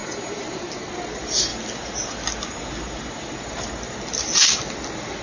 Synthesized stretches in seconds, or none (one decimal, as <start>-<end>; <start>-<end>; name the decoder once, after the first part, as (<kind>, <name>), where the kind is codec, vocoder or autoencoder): none